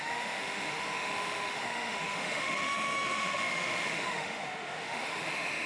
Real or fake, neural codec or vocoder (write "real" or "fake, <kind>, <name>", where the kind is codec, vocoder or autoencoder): fake, autoencoder, DAC-VAE